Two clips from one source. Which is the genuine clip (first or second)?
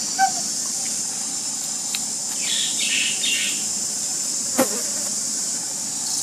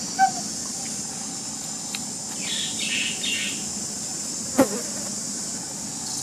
second